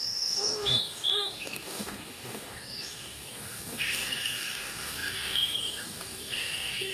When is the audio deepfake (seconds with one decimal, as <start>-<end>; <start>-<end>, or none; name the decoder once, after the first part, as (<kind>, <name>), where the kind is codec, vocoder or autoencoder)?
0.0-6.9 (codec, DAC)